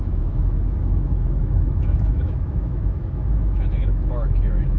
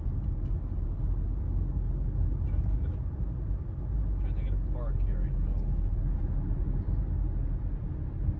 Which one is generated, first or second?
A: first